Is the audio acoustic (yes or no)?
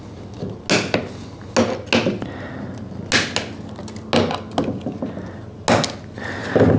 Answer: yes